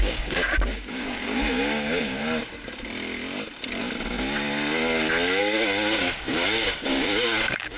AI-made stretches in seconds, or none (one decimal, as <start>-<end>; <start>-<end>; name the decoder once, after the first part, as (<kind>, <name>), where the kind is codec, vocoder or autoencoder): 0.0-2.2 (codec, DAC); 5.4-7.8